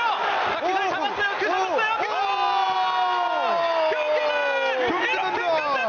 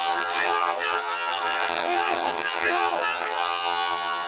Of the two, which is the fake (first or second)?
second